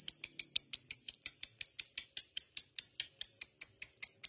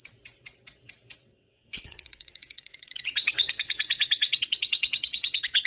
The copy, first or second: second